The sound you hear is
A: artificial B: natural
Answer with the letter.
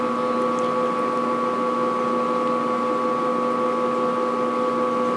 B